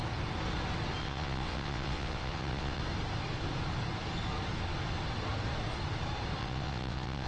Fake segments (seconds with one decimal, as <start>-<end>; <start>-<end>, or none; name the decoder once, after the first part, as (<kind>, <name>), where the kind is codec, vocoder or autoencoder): 1.0-2.8 (vocoder, WaveNeXt); 6.4-7.3